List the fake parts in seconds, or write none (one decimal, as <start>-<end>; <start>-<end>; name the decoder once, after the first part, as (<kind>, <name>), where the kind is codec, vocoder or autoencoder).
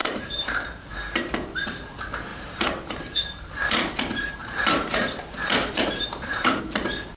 0.0-1.3 (vocoder, BigVGAN v2); 2.3-6.6